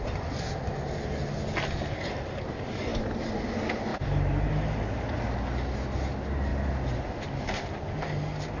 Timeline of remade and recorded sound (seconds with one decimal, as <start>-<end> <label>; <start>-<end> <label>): 0.0-2.9 recorded; 2.9-3.5 remade; 3.5-3.9 recorded; 3.9-4.5 remade; 4.5-8.6 recorded